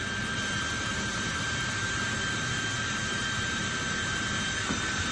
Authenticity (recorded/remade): recorded